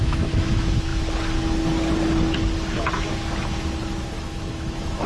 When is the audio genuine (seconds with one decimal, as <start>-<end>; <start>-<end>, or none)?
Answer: 0.9-4.0